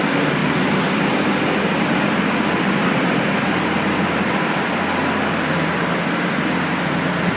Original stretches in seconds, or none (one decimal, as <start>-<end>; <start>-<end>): 0.0-0.4; 4.8-7.4